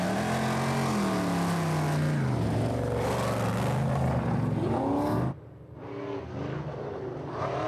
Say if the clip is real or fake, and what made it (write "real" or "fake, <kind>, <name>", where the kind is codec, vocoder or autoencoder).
real